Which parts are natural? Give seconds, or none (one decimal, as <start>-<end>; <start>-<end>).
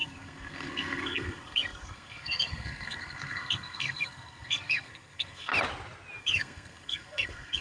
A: 5.5-6.2